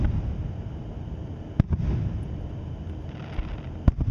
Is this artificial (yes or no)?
no